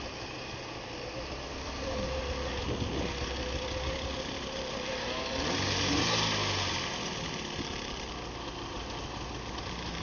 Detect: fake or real real